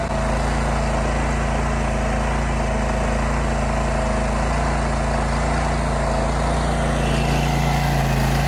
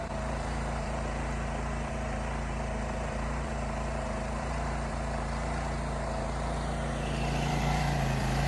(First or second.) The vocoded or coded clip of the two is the second